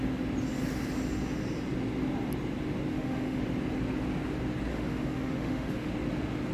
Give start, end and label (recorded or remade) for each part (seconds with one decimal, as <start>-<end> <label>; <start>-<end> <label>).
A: 0.0-2.9 recorded; 2.9-3.4 remade; 3.4-4.7 recorded; 4.7-5.9 remade; 5.9-6.5 recorded